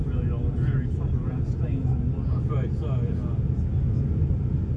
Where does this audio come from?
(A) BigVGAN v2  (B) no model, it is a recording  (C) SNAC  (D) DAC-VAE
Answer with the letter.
B